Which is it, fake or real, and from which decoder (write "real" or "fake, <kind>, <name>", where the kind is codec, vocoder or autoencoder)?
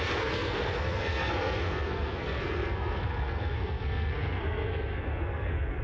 fake, codec, SNAC